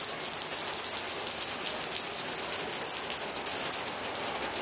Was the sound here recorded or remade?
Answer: recorded